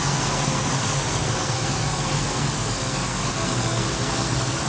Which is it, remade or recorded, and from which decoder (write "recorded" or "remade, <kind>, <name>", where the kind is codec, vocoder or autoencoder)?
remade, codec, SNAC